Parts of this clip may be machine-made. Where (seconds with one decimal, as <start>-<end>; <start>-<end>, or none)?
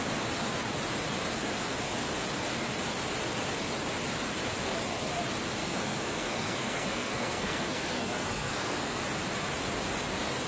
5.6-9.0